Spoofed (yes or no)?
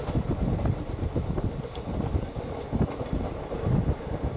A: no